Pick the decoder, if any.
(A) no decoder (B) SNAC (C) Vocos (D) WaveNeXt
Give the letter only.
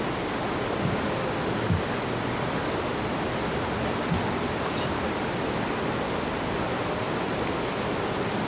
A